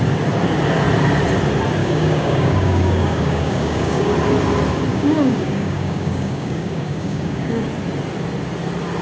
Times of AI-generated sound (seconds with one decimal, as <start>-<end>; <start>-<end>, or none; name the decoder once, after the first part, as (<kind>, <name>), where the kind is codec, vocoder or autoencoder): 1.8-4.1 (codec, DAC); 4.9-7.7